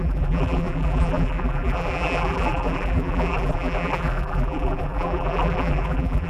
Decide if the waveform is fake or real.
fake